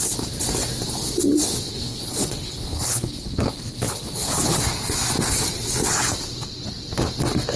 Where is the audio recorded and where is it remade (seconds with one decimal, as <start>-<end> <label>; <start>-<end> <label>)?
0.0-1.7 recorded; 1.7-4.6 remade; 4.6-7.6 recorded